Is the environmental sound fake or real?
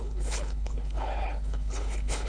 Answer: fake